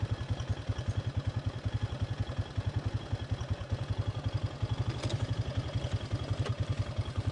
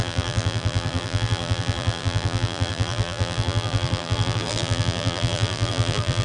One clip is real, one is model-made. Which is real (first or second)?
first